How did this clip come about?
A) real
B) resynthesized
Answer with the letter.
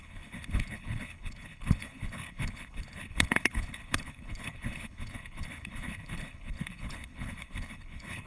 B